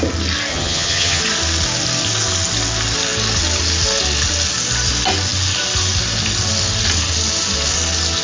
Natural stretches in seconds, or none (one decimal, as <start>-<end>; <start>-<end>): 0.0-0.5; 1.2-8.2